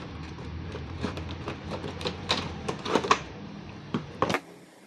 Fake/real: fake